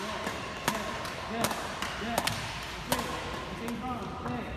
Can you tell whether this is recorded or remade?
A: recorded